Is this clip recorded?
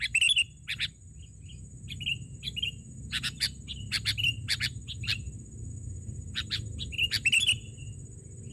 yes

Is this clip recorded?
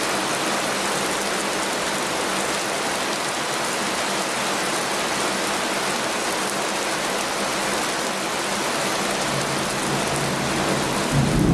yes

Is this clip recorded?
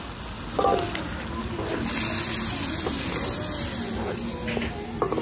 yes